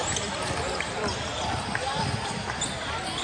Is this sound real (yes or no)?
yes